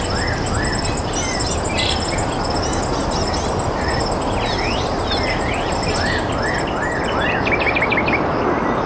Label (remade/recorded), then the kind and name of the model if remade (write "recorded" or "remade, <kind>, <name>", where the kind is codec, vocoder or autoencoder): recorded